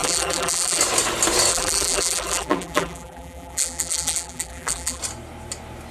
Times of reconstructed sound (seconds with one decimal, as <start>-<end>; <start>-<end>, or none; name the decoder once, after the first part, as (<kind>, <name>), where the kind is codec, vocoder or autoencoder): 0.0-0.8 (vocoder, BigVGAN v2); 1.5-5.0